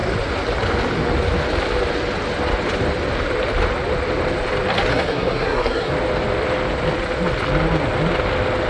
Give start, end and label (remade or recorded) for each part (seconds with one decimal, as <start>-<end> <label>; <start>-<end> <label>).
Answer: 0.0-4.9 recorded; 4.9-5.9 remade; 5.9-8.7 recorded